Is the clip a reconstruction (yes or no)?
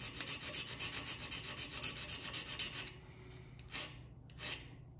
no